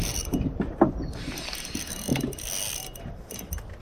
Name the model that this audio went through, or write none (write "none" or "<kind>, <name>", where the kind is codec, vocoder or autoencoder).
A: none